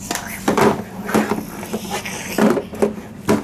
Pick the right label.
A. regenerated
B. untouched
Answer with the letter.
B